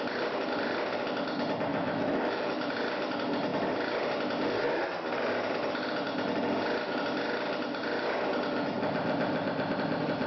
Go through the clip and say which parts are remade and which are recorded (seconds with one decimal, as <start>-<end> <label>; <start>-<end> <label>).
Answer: 0.0-1.7 recorded; 1.7-2.7 remade; 2.7-10.3 recorded